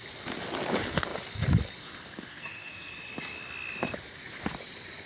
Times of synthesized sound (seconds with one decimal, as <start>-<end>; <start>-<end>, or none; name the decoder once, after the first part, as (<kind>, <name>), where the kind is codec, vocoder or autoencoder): 2.3-2.9 (codec, SNAC)